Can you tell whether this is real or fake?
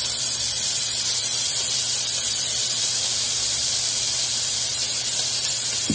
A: fake